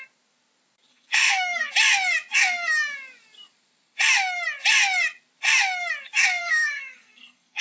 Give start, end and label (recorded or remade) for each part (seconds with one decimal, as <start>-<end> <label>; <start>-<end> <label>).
0.0-0.9 recorded; 0.9-1.7 remade; 1.7-6.4 recorded; 6.4-7.6 remade